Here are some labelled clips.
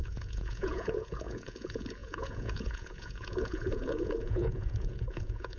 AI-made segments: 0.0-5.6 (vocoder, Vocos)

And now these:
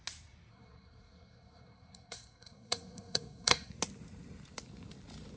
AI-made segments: 0.5-3.7 (codec, SNAC)

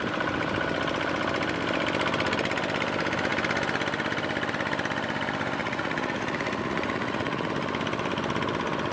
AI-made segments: 5.6-7.5 (vocoder, Vocos)

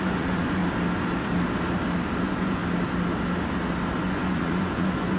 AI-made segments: 0.0-0.6 (vocoder, Vocos); 2.2-2.6; 4.0-5.2

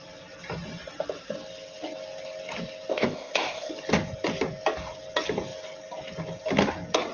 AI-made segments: 2.9-3.7 (codec, ZipCodec)

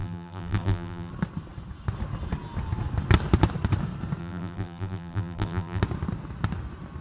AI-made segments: 0.0-1.1 (vocoder, BigVGAN v2); 4.2-5.8

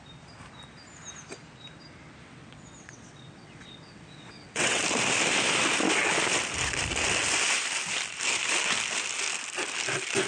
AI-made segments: 2.2-4.8 (vocoder, WaveNeXt)